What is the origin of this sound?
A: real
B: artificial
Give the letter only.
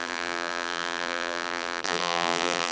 B